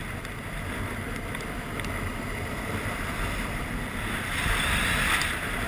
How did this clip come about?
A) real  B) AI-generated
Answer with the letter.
B